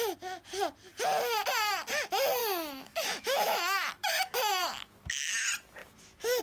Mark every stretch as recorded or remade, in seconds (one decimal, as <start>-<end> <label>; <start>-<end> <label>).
0.0-2.4 recorded; 2.4-5.3 remade; 5.3-5.8 recorded; 5.8-6.4 remade

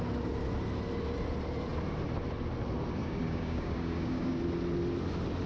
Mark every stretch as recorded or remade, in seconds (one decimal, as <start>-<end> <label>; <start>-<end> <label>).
0.0-3.0 recorded; 3.0-4.4 remade; 4.4-5.5 recorded